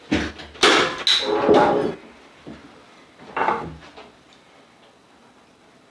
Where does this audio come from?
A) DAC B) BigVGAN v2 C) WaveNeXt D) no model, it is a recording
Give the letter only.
D